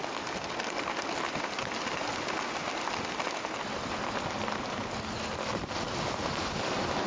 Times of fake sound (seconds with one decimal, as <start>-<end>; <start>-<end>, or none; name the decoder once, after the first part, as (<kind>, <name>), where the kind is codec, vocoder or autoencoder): none